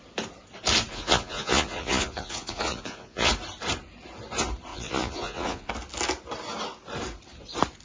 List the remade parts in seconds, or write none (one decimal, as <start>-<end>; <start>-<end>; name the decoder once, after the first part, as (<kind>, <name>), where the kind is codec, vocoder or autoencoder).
0.9-3.3 (vocoder, Vocos); 4.7-5.7